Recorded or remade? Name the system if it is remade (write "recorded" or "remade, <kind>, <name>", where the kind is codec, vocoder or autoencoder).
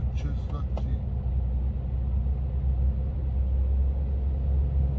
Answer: recorded